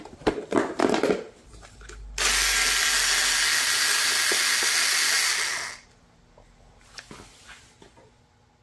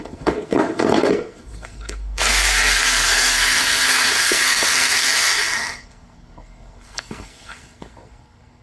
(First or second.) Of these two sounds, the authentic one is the first